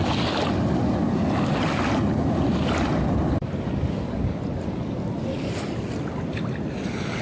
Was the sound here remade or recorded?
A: recorded